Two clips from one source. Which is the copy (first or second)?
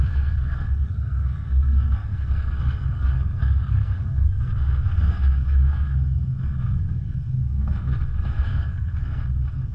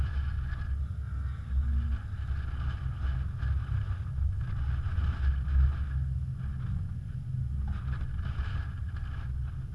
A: first